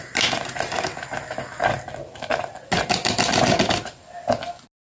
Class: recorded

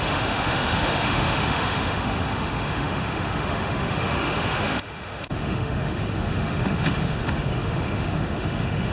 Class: remade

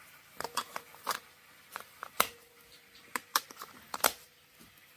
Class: remade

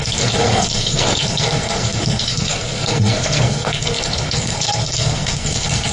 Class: remade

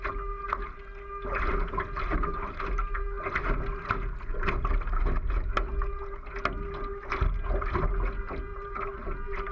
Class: recorded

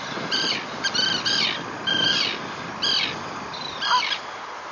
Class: recorded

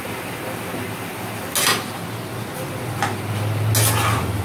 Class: recorded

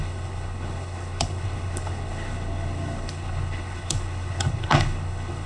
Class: remade